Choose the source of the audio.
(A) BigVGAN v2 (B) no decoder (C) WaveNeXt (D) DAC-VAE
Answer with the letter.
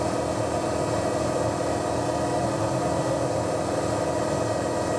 B